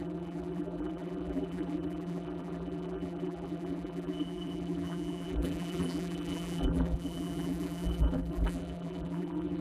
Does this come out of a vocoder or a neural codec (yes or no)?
yes